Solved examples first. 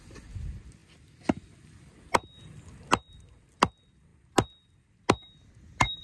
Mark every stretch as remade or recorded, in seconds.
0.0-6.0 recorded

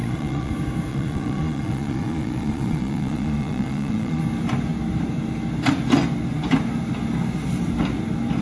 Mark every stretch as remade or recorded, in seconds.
0.0-0.5 remade; 0.5-0.9 recorded; 0.9-4.2 remade; 4.2-8.4 recorded

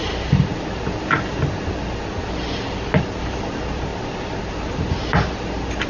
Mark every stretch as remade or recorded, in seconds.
0.0-0.5 remade; 0.5-3.0 recorded; 3.0-3.9 remade; 3.9-4.4 recorded; 4.4-5.9 remade

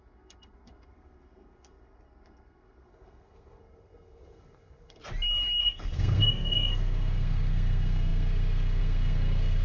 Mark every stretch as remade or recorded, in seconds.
0.0-5.0 remade; 5.0-5.6 recorded; 5.6-9.6 remade

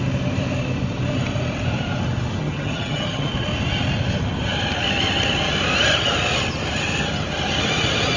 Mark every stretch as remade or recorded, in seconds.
0.0-2.3 recorded; 2.3-3.3 remade; 3.3-8.2 recorded

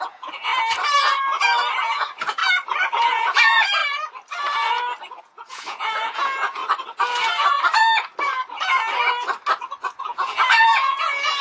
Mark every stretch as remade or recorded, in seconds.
0.0-0.5 remade; 0.5-1.8 recorded; 1.8-2.4 remade; 2.4-3.0 recorded; 3.0-3.8 remade; 3.8-5.2 recorded; 5.2-6.6 remade; 6.6-10.0 recorded; 10.0-11.4 remade